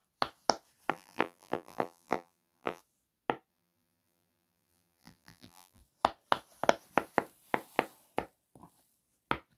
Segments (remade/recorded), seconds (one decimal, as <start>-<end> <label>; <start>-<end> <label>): 0.0-0.9 recorded; 0.9-2.8 remade; 2.8-3.5 recorded; 3.5-5.8 remade; 5.8-9.6 recorded